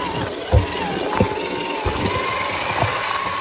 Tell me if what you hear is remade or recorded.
recorded